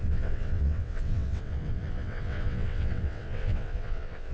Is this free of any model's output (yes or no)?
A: no